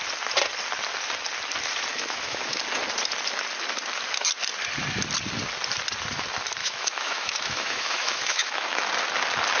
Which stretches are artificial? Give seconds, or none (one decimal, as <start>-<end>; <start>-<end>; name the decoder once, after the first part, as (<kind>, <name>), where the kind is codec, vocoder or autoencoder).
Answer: 1.9-2.6 (autoencoder, DAC-VAE); 6.6-8.9